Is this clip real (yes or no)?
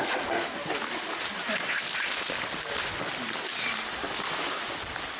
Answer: yes